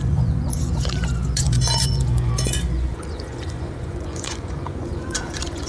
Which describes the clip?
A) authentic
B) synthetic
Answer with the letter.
B